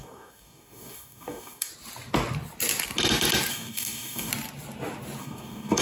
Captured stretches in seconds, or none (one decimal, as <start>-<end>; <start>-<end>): 1.7-3.5; 4.3-5.2